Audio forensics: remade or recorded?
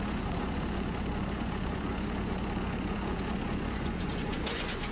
remade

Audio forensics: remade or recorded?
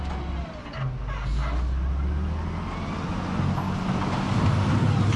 recorded